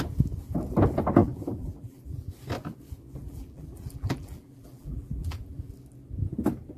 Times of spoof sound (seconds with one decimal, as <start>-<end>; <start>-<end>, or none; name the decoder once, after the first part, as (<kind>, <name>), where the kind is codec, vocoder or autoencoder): 1.2-2.3 (vocoder, BigVGAN v2); 3.2-5.7